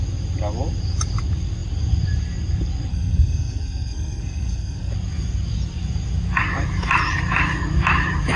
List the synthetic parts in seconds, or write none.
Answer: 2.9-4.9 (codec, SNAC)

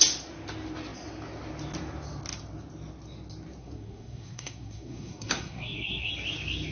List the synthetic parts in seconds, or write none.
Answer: 3.6-6.1 (codec, SNAC)

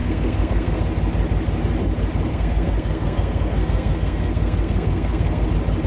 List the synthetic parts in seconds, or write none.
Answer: 0.0-0.8 (codec, SNAC); 2.3-5.5

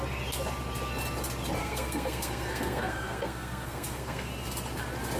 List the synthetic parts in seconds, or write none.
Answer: 1.6-4.3 (codec, SNAC)

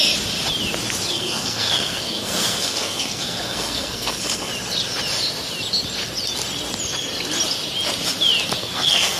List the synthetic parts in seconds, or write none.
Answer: 1.1-4.5 (codec, SNAC); 8.6-9.2

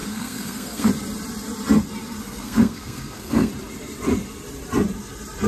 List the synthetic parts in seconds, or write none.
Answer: 0.0-0.9 (codec, SNAC); 2.2-3.5

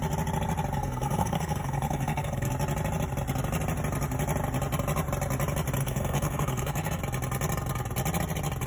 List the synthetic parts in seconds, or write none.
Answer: 0.8-2.5 (codec, SNAC); 5.8-7.0